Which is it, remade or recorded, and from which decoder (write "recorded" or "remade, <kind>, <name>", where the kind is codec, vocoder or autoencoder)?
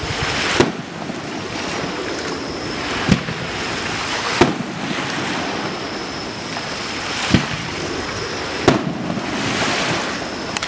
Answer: recorded